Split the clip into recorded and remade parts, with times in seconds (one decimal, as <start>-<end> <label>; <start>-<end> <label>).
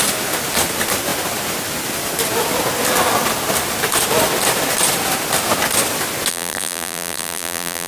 0.0-6.3 recorded; 6.3-7.9 remade